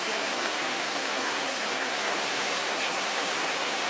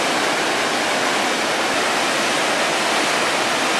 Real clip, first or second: second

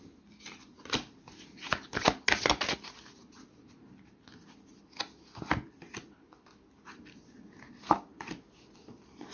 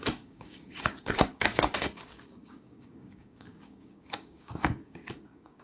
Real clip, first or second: first